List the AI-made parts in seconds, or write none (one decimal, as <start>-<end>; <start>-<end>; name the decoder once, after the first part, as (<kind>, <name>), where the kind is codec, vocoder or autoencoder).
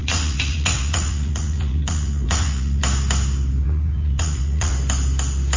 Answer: 0.0-2.8 (vocoder, Vocos); 3.6-4.7